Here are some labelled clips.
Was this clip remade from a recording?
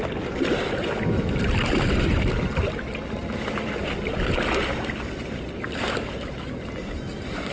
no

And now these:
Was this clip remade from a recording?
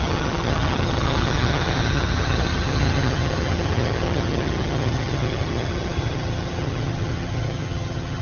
yes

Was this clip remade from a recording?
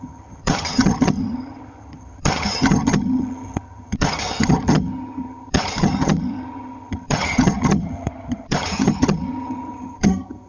yes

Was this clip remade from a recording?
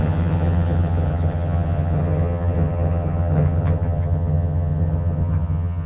yes